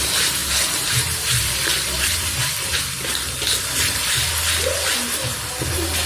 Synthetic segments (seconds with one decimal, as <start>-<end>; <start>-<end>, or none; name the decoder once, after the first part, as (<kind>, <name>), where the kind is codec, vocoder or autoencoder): none